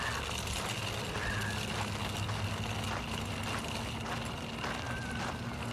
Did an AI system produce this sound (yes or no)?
no